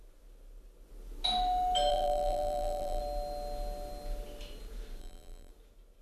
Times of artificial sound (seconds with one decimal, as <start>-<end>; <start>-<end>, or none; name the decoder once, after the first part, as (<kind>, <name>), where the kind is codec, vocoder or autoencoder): 1.9-3.0 (vocoder, BigVGAN v2); 5.0-5.5